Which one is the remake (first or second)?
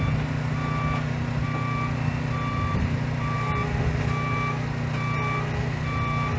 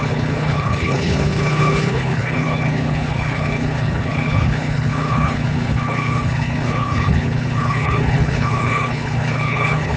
second